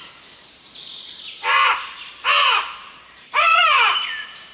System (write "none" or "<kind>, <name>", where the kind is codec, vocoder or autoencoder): vocoder, BigVGAN v2